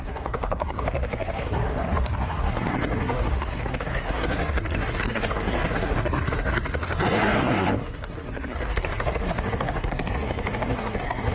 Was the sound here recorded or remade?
remade